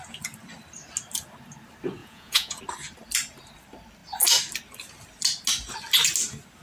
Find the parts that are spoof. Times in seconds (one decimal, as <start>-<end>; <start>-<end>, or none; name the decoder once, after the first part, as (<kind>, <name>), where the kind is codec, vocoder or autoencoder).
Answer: 2.0-2.6 (vocoder, Vocos)